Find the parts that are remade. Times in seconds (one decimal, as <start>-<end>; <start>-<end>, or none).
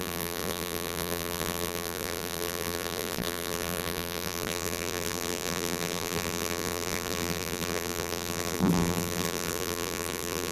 0.0-10.5